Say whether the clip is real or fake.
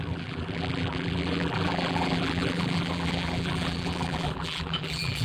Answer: fake